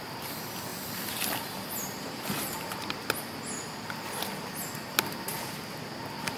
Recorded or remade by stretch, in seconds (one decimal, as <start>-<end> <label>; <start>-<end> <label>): 0.0-0.7 recorded; 0.7-3.2 remade; 3.2-6.4 recorded